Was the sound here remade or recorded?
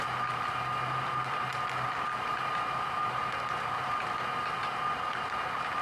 recorded